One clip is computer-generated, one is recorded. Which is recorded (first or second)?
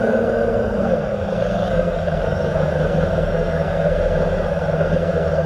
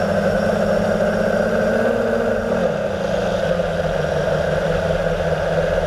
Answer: second